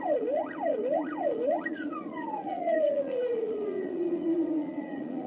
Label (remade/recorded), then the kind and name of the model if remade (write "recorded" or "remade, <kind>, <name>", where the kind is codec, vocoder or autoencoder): remade, vocoder, Vocos